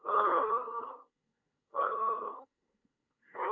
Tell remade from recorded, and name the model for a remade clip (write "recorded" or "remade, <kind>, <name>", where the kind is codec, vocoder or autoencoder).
remade, codec, SNAC